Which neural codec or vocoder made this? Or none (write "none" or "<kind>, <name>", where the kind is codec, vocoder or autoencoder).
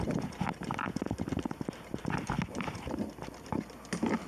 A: none